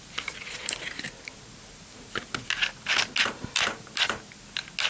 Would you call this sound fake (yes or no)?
no